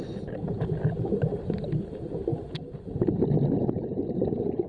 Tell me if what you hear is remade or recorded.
recorded